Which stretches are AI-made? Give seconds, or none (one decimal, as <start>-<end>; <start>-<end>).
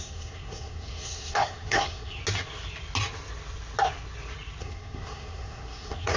0.0-2.2; 4.6-6.2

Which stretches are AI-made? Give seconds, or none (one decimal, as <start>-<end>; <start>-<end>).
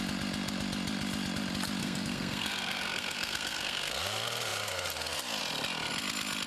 1.8-3.9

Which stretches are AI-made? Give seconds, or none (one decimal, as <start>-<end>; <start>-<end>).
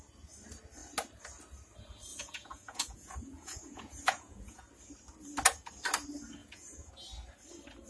2.1-4.6; 6.4-6.9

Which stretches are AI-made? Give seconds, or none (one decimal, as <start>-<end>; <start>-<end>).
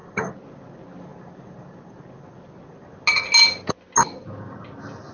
none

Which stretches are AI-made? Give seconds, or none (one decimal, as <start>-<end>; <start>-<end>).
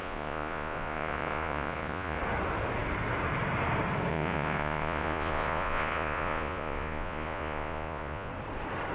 0.0-2.2; 4.1-8.3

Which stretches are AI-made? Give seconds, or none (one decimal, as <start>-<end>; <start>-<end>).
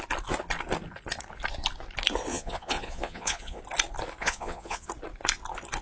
2.3-3.6; 4.2-4.9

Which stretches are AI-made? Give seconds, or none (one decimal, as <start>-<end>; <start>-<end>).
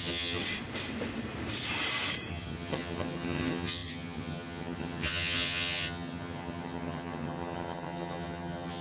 0.0-0.4; 2.3-8.8